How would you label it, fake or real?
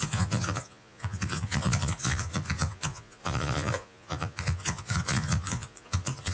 fake